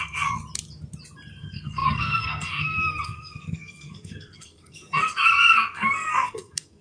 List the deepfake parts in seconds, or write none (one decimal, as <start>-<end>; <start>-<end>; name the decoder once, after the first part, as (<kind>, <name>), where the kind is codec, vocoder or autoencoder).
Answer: 0.0-0.4 (codec, SNAC); 1.4-6.8